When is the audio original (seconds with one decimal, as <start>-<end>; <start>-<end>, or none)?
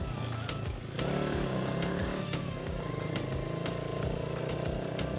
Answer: 0.0-2.0; 3.1-5.2